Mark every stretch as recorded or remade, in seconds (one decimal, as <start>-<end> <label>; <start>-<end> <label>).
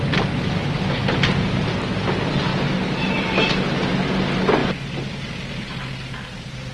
0.0-6.7 recorded